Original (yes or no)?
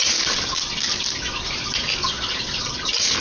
yes